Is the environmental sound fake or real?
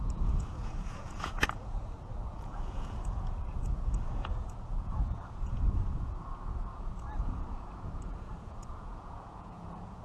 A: fake